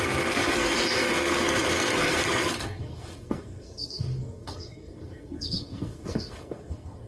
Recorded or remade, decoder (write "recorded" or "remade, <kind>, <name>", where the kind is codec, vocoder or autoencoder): remade, codec, SNAC